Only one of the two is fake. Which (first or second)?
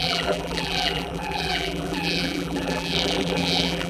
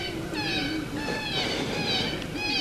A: first